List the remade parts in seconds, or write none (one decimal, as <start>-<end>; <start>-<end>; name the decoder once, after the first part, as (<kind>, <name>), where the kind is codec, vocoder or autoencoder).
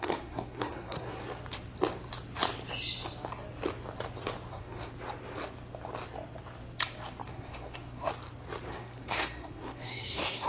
0.0-1.2 (codec, SNAC); 4.5-4.9; 7.3-8.1; 8.7-10.5